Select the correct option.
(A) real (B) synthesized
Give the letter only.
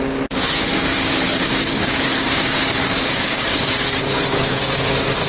B